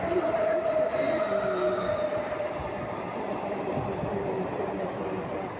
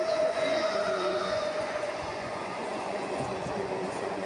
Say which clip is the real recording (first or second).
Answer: first